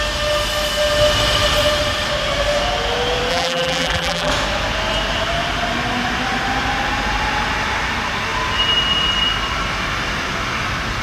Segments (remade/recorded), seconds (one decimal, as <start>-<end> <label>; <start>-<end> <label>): 0.0-3.3 recorded; 3.3-4.3 remade; 4.3-11.0 recorded